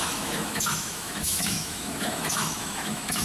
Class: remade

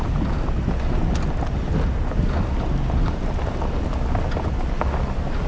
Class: recorded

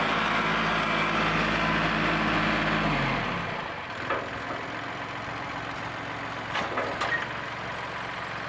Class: recorded